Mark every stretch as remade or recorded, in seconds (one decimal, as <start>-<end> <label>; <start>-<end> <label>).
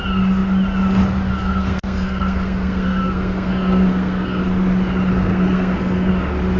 0.0-1.5 recorded; 1.5-4.4 remade; 4.4-5.1 recorded; 5.1-6.1 remade; 6.1-6.6 recorded